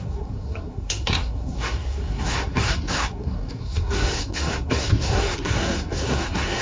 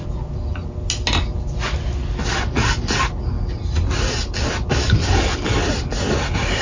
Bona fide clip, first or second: second